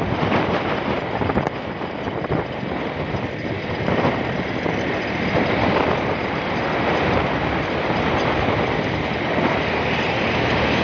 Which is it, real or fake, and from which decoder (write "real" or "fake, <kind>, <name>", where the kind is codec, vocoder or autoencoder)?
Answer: fake, vocoder, BigVGAN v2